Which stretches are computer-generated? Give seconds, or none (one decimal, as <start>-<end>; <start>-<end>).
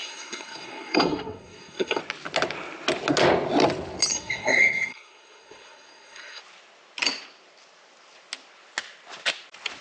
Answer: 0.0-2.0; 4.1-6.4